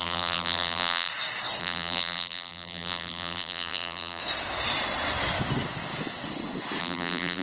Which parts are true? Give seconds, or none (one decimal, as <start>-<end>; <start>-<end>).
1.1-1.6; 4.2-6.8